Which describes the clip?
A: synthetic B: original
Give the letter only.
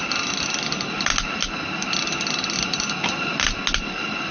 B